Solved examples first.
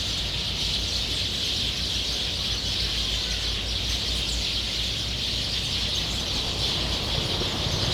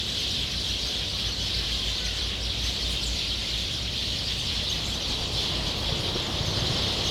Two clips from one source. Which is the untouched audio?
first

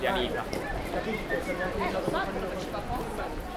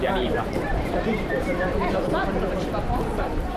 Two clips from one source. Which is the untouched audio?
first